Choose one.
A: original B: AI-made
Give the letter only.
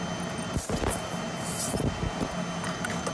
A